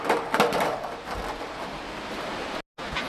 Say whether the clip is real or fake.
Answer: real